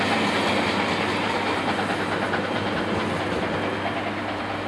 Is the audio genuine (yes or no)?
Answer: yes